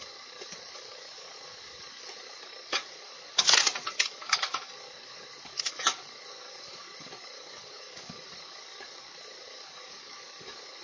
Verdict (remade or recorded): remade